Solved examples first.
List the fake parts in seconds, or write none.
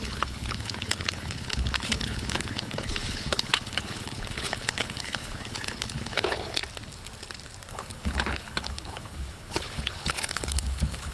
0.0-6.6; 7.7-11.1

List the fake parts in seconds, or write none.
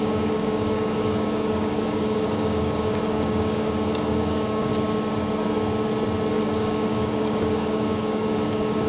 0.0-4.7; 6.3-8.9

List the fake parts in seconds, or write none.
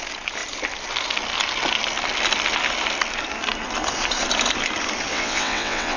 5.1-6.0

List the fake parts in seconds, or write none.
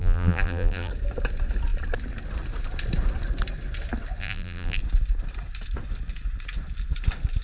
0.0-0.9; 4.2-4.8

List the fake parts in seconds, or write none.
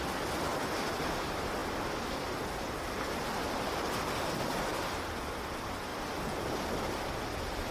none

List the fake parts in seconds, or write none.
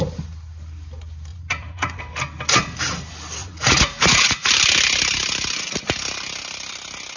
1.3-2.0; 3.4-4.5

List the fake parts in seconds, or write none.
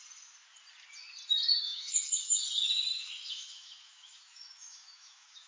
1.6-2.4; 2.9-5.5